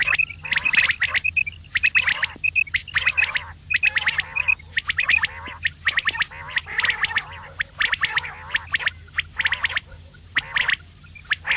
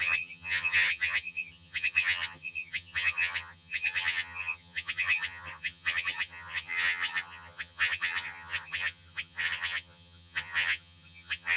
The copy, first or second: second